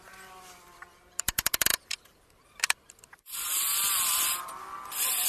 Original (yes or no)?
no